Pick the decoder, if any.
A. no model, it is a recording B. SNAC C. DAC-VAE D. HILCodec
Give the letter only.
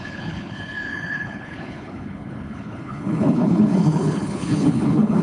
D